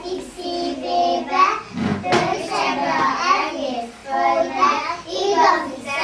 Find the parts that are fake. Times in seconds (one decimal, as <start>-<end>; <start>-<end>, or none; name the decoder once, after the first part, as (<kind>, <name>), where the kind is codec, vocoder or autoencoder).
none